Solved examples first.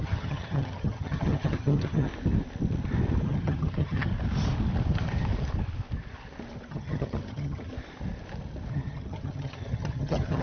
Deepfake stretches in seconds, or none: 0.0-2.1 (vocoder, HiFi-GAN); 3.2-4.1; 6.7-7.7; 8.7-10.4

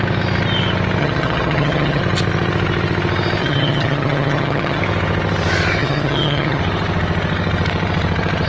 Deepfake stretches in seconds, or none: 1.0-2.0 (vocoder, HiFi-GAN); 3.4-4.8; 5.8-6.6

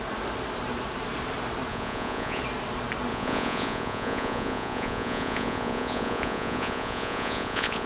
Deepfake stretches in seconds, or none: 1.7-2.4 (vocoder, Vocos); 3.1-7.9

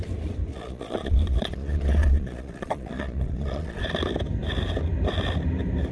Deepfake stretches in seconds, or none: 0.5-3.8 (vocoder, Vocos)

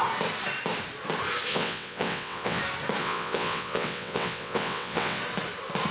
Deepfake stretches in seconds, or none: 1.5-2.6 (vocoder, WaveNeXt); 3.0-5.2

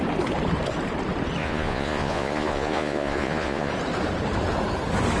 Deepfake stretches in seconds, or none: 1.4-3.7 (vocoder, Vocos)